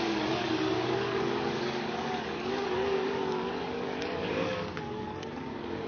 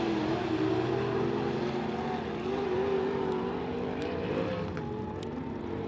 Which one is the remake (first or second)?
first